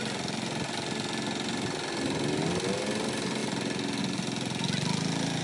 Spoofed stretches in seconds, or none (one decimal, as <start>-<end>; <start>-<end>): none